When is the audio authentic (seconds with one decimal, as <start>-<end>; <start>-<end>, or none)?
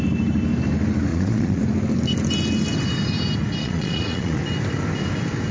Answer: 0.0-1.1; 1.6-3.6; 4.4-5.5